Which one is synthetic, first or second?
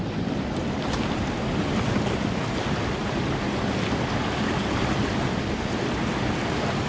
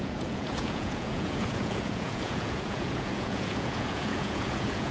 second